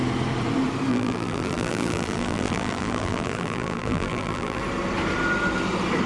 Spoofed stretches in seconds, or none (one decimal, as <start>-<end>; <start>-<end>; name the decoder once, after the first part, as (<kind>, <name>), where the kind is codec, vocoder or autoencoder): 0.9-4.6 (vocoder, BigVGAN v2)